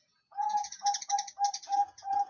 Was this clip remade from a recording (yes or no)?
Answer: yes